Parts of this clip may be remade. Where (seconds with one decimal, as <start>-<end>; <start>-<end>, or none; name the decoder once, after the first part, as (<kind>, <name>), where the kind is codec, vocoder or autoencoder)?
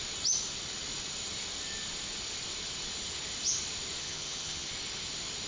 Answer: 4.0-4.7 (vocoder, HiFi-GAN)